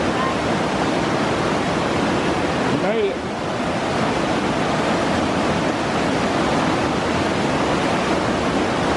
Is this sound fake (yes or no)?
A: no